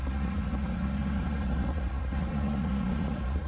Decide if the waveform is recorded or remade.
remade